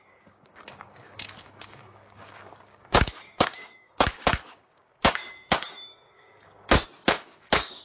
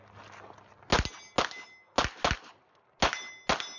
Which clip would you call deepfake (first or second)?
first